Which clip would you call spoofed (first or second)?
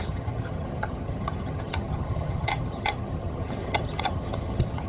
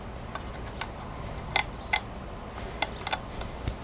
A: first